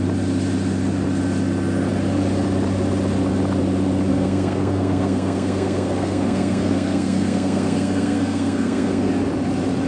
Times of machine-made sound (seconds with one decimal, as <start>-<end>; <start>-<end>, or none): 4.1-9.1